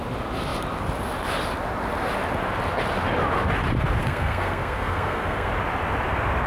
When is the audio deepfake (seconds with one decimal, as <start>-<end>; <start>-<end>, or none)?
4.0-5.5